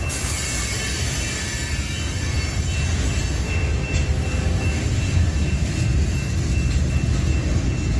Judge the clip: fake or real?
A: real